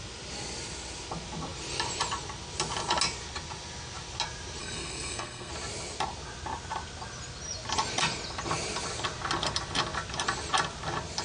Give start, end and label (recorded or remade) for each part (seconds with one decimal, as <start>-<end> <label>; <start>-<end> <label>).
0.0-4.6 recorded; 4.6-5.5 remade; 5.5-11.2 recorded